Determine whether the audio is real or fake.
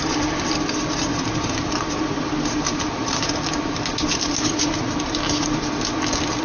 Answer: real